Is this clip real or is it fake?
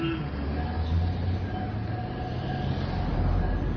real